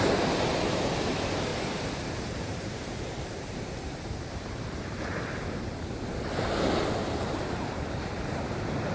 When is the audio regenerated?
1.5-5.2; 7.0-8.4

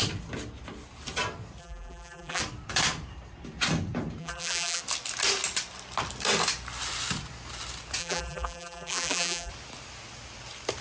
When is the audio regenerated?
1.6-2.4; 4.2-4.8; 8.0-9.5

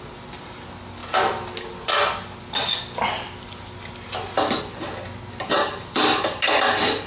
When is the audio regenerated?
0.0-1.0; 5.3-7.1

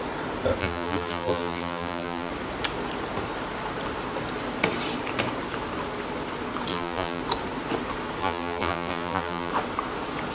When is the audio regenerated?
0.6-2.3; 6.7-7.2; 8.2-9.5

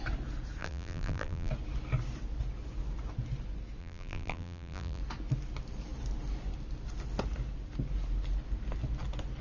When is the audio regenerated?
0.6-1.5; 3.8-5.0

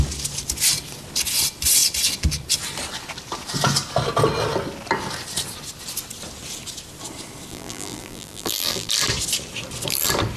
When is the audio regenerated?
7.5-8.9

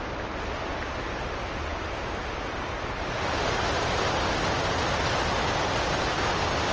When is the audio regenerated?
none

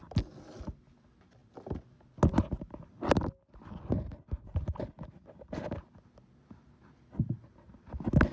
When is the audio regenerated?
none